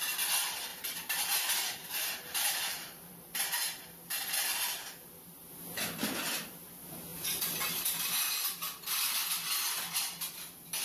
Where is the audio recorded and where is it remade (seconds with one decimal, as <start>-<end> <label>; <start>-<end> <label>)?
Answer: 0.0-0.7 recorded; 0.7-3.1 remade; 3.1-7.1 recorded; 7.1-8.3 remade; 8.3-10.8 recorded